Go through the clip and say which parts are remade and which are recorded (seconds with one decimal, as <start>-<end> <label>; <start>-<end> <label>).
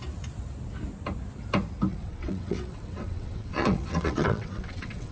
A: 0.0-1.9 recorded; 1.9-5.1 remade